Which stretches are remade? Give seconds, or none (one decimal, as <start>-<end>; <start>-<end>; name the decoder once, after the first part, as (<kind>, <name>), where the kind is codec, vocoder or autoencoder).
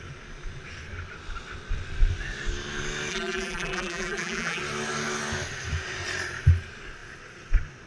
3.1-4.6 (vocoder, BigVGAN v2)